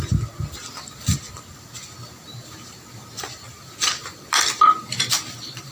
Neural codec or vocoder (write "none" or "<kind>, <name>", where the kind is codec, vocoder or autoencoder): none